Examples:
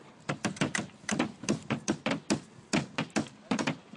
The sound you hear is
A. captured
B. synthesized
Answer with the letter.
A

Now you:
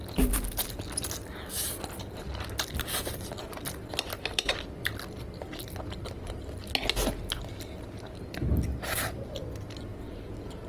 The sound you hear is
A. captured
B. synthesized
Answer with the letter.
A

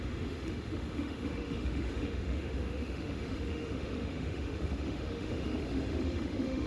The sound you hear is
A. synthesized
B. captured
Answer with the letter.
A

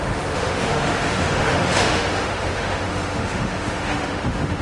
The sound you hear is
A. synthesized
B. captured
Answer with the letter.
A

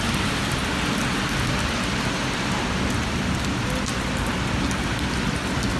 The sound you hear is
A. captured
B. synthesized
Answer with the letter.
A